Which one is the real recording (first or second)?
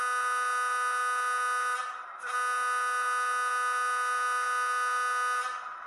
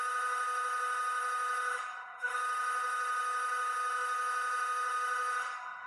first